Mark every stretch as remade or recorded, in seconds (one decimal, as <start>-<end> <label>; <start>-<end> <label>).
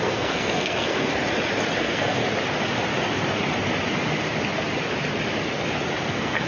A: 0.0-1.1 remade; 1.1-1.8 recorded; 1.8-2.2 remade; 2.2-6.1 recorded; 6.1-6.5 remade